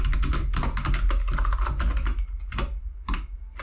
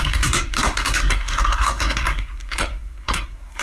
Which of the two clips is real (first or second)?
first